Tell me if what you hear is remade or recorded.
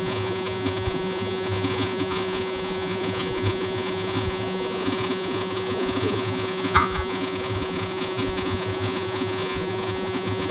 remade